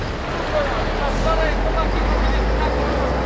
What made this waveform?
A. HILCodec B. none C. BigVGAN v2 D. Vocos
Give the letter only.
B